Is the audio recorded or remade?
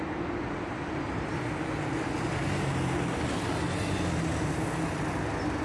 recorded